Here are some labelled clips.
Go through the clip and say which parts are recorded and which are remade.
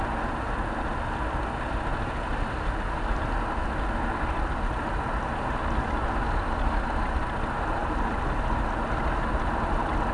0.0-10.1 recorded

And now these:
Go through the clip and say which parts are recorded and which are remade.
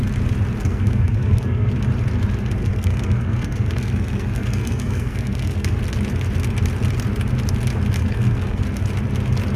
0.0-0.6 recorded; 0.6-1.7 remade; 1.7-2.6 recorded; 2.6-5.8 remade; 5.8-8.0 recorded; 8.0-8.6 remade; 8.6-9.6 recorded